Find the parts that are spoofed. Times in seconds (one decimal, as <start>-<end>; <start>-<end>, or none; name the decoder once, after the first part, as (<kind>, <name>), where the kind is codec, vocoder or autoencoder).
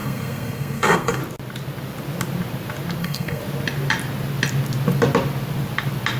0.0-1.2 (codec, SNAC); 3.0-3.4